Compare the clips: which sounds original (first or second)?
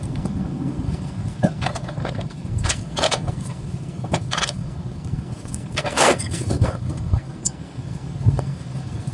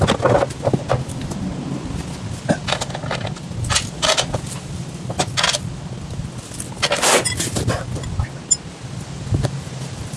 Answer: second